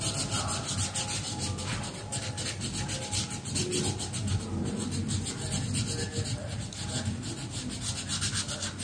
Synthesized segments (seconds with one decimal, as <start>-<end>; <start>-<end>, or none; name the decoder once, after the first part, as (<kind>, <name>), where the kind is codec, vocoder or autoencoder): none